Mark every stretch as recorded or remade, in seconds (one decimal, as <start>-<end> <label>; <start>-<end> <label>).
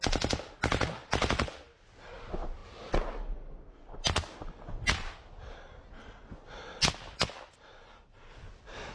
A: 0.0-8.9 recorded